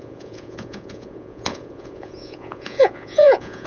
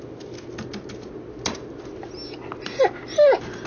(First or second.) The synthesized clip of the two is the first